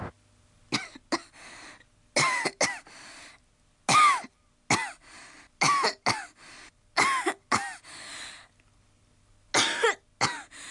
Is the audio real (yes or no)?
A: yes